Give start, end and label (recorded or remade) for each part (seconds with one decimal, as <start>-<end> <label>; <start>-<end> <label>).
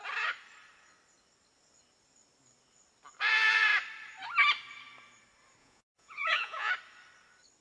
0.0-5.6 recorded; 5.6-6.7 remade; 6.7-7.6 recorded